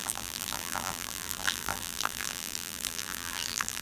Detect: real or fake fake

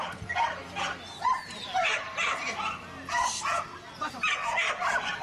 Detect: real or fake real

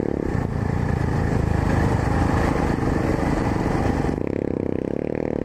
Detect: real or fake fake